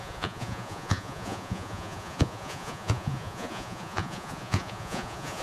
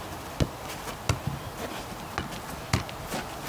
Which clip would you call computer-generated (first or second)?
first